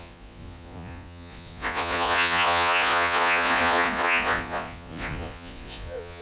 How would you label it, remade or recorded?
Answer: remade